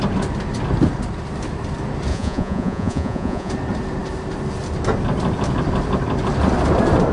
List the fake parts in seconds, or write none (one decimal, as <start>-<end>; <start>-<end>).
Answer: 2.1-3.5